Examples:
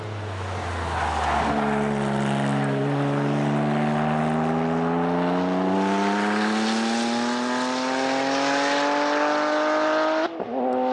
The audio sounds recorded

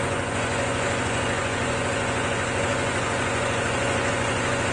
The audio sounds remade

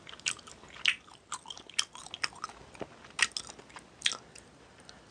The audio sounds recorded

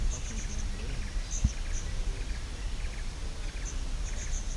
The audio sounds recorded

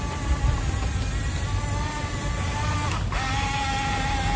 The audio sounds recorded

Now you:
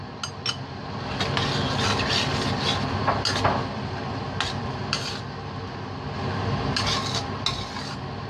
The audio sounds recorded